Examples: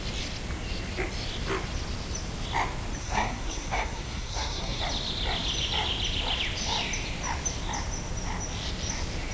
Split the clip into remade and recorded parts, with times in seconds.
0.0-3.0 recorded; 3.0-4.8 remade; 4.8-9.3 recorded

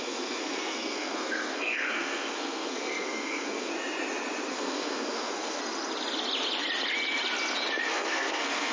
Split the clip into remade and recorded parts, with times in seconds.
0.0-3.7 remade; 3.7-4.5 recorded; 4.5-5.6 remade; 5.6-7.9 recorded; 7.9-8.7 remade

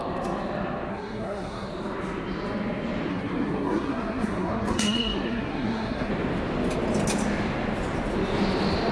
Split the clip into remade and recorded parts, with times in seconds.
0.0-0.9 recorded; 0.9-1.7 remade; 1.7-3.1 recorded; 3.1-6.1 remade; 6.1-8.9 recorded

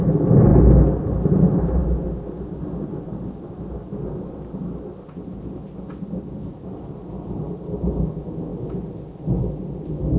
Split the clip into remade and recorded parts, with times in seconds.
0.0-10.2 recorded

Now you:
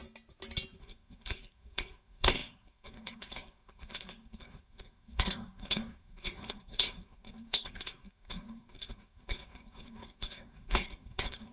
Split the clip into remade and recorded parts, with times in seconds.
0.0-0.8 recorded; 0.8-11.5 remade

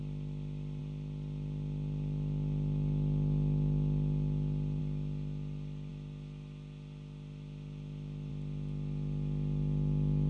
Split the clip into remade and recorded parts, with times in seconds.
0.0-10.3 recorded